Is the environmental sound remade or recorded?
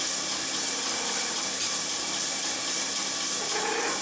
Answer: recorded